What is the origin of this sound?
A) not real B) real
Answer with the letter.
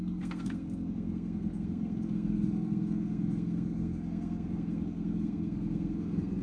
A